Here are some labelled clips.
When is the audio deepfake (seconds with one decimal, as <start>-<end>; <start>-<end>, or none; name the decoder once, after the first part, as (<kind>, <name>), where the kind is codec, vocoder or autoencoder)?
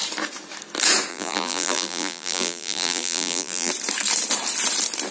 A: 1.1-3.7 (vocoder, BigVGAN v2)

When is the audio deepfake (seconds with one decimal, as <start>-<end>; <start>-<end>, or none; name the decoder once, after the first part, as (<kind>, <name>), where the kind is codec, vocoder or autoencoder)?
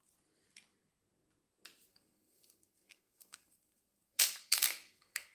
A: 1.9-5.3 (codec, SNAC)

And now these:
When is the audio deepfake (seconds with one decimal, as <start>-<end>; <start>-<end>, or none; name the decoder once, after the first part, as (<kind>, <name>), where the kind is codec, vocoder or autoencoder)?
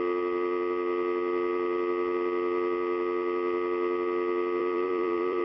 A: 4.6-5.4 (vocoder, BigVGAN v2)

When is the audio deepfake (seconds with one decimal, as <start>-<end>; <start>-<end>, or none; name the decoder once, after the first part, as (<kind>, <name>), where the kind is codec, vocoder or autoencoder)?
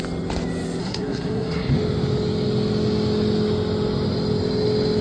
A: 0.8-1.7 (codec, SNAC)